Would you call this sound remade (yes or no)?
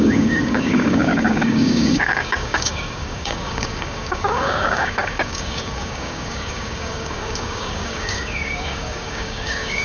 yes